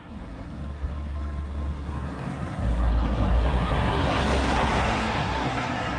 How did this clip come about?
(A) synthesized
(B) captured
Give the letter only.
A